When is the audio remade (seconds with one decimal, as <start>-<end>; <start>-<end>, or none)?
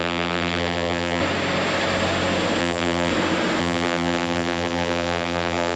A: 0.0-1.2; 2.6-3.1; 3.6-5.8